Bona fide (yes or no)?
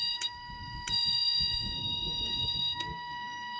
no